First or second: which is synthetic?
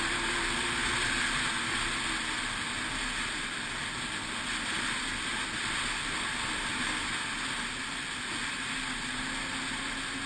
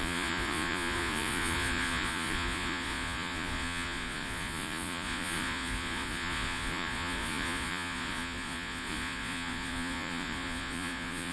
second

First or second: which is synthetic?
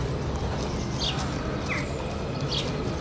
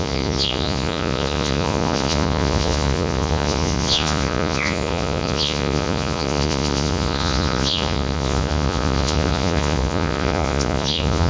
second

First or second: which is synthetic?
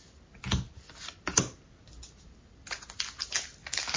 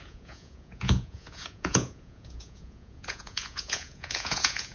second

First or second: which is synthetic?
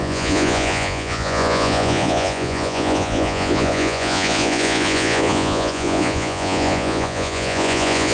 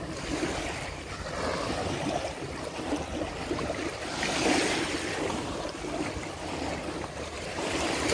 first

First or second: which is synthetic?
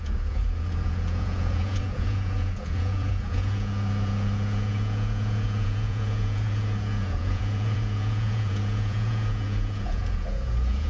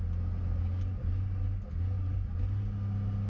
first